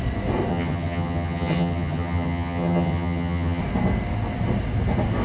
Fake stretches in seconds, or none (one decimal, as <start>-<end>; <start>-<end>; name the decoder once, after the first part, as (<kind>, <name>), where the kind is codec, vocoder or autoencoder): 0.5-3.6 (vocoder, HiFi-GAN)